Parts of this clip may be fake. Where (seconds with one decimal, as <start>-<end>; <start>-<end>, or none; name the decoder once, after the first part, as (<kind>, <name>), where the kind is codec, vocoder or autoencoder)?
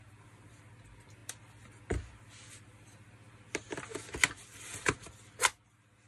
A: none